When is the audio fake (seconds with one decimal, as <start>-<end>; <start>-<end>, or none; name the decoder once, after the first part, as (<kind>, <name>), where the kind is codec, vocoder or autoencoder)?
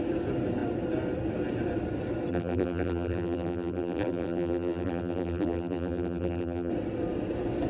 2.3-6.7 (vocoder, BigVGAN v2)